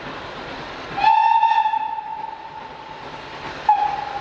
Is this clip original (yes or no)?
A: yes